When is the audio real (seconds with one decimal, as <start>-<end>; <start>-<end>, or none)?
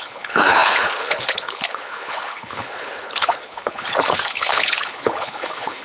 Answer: none